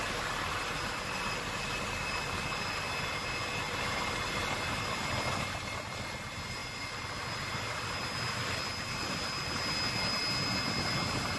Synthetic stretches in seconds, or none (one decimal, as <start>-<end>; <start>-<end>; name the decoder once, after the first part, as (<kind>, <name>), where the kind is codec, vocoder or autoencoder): none